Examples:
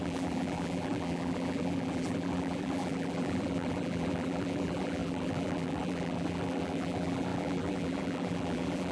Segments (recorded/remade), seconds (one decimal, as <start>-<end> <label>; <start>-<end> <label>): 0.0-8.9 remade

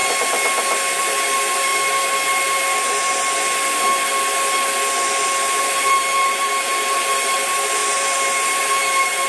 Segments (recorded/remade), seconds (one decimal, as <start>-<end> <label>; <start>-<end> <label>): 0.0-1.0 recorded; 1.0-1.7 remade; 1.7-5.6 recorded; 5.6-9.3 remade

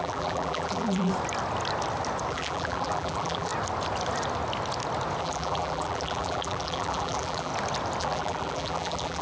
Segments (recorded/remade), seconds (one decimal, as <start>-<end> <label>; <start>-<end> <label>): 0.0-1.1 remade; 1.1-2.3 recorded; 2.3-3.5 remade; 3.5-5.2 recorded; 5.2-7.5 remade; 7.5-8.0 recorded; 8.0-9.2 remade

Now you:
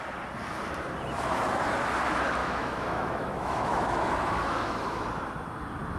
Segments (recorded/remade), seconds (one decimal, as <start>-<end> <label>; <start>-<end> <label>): 0.0-2.4 recorded; 2.4-5.0 remade; 5.0-6.0 recorded

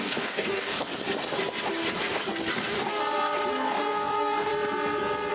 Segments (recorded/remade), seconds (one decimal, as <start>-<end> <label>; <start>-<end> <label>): 0.0-0.9 remade; 0.9-2.5 recorded; 2.5-2.9 remade; 2.9-3.5 recorded; 3.5-4.5 remade; 4.5-5.3 recorded

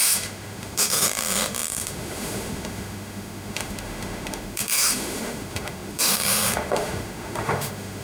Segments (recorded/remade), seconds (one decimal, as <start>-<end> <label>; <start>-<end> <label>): 0.0-8.0 remade